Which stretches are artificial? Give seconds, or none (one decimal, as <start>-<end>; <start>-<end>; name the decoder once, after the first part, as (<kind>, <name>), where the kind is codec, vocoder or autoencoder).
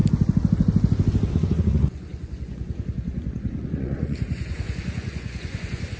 1.3-6.0 (vocoder, Vocos)